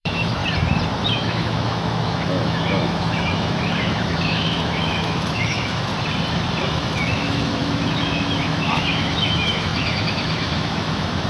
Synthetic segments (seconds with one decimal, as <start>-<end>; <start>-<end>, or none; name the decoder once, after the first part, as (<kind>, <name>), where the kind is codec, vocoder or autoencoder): 0.0-0.4 (autoencoder, DAC-VAE); 1.0-5.9; 6.6-11.3